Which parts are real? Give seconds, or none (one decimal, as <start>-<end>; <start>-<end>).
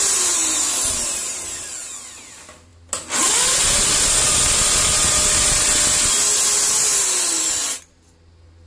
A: 0.0-8.7